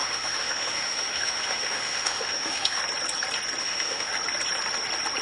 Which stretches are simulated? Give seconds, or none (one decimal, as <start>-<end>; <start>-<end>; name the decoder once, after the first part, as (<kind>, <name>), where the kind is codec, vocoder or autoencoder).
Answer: 0.0-2.8 (autoencoder, DAC-VAE); 3.6-4.1